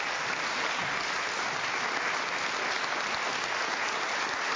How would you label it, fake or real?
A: real